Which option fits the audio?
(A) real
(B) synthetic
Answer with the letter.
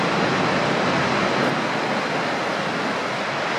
A